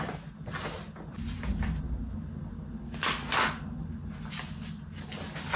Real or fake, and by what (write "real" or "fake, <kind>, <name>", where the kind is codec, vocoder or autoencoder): real